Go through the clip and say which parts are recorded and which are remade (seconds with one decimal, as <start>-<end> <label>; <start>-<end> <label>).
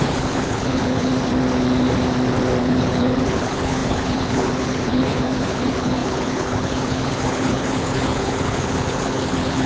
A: 0.0-1.1 remade; 1.1-2.6 recorded; 2.6-9.7 remade